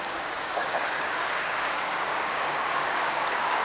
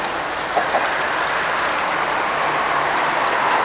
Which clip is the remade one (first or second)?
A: first